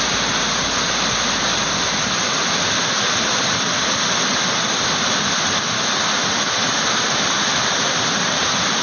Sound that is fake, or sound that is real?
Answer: real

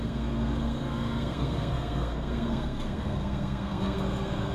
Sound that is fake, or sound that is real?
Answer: fake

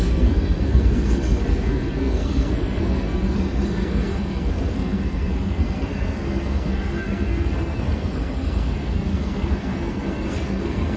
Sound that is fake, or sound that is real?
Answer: fake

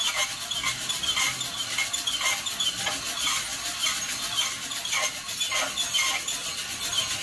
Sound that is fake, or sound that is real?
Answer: real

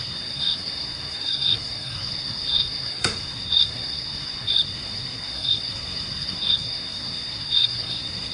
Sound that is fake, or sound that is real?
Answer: fake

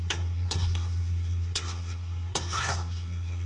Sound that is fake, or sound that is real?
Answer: fake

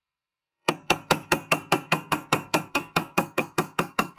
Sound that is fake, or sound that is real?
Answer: fake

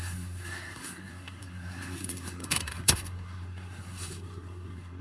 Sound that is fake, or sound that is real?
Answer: fake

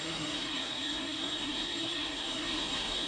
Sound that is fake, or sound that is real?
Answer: fake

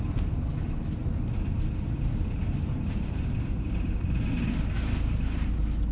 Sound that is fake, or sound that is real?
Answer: real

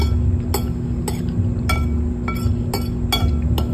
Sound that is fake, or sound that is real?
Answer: real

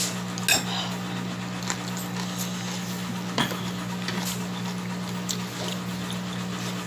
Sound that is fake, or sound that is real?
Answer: real